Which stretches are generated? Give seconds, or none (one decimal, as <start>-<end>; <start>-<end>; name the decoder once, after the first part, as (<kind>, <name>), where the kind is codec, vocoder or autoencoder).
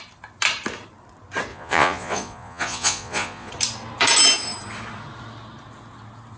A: 1.5-3.5 (vocoder, Vocos)